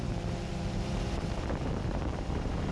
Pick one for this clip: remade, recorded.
remade